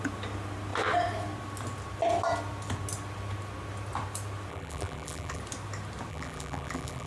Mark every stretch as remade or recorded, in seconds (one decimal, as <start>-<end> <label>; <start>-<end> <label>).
0.0-4.5 recorded; 4.5-5.4 remade; 5.4-6.1 recorded; 6.1-7.1 remade